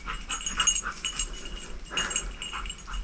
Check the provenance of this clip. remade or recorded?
recorded